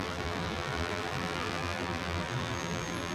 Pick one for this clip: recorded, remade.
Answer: remade